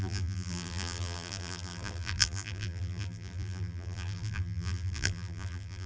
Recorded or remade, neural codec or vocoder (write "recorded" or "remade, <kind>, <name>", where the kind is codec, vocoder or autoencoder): remade, vocoder, BigVGAN v2